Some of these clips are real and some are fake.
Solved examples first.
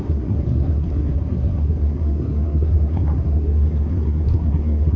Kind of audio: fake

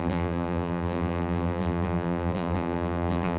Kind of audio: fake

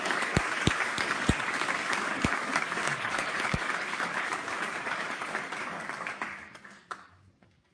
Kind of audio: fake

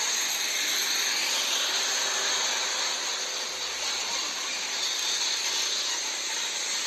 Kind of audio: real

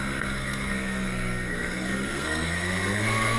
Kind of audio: fake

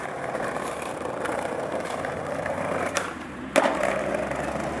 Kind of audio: fake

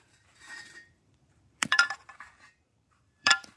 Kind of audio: fake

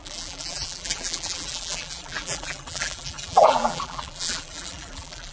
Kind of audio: fake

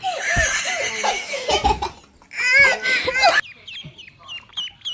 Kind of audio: real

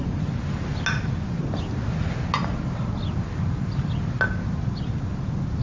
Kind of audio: real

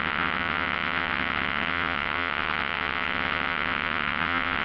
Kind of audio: fake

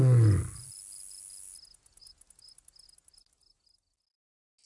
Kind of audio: real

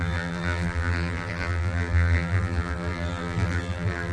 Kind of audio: fake